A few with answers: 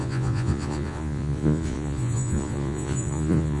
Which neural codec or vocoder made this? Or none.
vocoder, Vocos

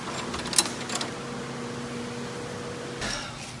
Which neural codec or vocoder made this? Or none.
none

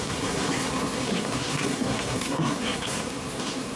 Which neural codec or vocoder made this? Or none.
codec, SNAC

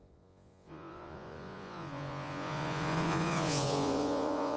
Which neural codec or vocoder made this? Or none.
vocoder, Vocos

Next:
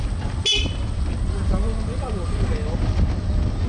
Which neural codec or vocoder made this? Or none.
none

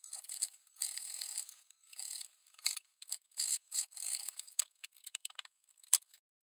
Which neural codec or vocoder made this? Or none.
codec, SNAC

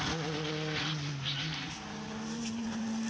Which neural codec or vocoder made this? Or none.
none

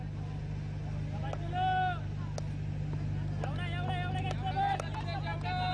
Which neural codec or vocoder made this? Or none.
none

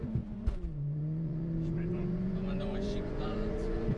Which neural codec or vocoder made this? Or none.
vocoder, Vocos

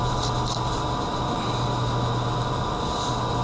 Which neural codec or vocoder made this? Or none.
none